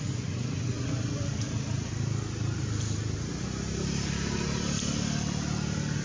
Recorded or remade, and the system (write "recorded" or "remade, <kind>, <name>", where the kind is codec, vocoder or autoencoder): recorded